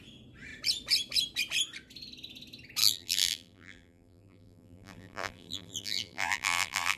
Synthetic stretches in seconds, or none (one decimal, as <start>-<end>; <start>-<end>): 2.8-7.0